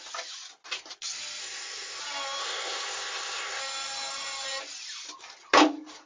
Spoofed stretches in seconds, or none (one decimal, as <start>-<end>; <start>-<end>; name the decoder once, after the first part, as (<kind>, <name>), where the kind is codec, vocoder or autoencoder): 1.4-2.0 (codec, SNAC); 2.4-3.6